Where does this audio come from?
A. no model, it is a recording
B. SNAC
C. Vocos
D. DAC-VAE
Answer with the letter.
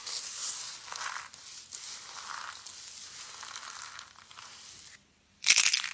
A